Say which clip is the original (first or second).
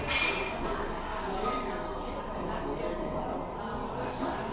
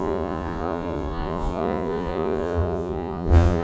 first